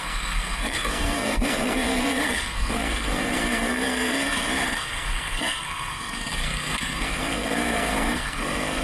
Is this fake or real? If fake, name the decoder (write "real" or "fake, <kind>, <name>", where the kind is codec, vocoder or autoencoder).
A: fake, codec, SNAC